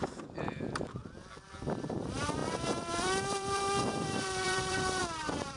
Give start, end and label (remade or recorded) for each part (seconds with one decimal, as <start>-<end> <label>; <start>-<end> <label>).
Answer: 0.0-1.0 remade; 1.0-1.9 recorded; 1.9-5.6 remade

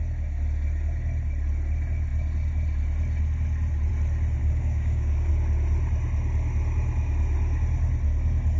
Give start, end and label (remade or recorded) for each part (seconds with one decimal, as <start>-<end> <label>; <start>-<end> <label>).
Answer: 0.0-4.4 recorded; 4.4-5.3 remade; 5.3-8.6 recorded